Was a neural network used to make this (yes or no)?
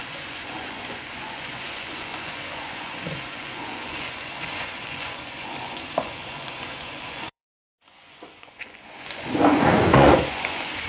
yes